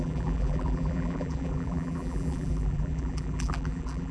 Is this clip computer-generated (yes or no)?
yes